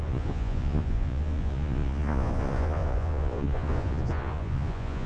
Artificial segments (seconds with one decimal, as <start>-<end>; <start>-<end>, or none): 0.0-5.1